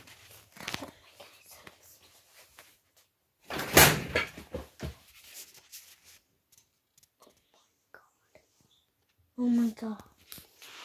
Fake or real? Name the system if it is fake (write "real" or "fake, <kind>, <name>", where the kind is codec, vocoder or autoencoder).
real